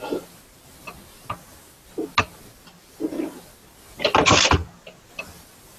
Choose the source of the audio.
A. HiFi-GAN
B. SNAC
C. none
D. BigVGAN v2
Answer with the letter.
C